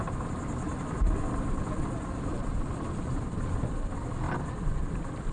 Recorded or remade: recorded